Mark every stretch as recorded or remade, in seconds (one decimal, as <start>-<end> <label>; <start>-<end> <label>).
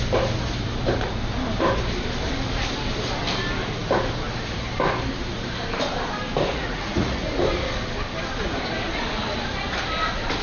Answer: 0.0-6.5 recorded; 6.5-7.4 remade; 7.4-10.4 recorded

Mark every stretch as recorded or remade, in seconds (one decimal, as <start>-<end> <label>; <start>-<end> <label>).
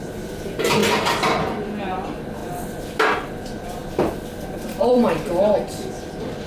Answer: 0.0-0.8 remade; 0.8-1.8 recorded; 1.8-2.4 remade; 2.4-3.1 recorded; 3.1-6.5 remade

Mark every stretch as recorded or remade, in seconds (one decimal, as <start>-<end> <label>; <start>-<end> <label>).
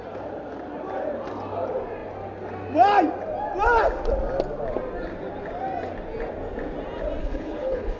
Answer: 0.0-7.2 recorded; 7.2-8.0 remade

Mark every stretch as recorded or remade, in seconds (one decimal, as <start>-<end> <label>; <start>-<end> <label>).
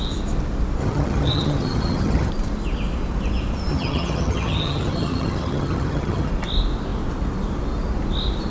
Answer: 0.0-0.8 recorded; 0.8-2.3 remade; 2.3-3.7 recorded; 3.7-6.3 remade; 6.3-8.5 recorded